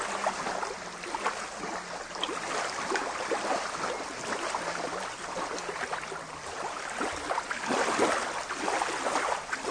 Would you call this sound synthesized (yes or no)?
no